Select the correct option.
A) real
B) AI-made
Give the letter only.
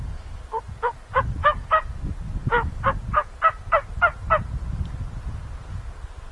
A